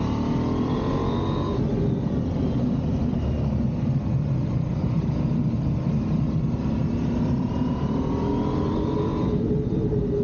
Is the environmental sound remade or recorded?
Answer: recorded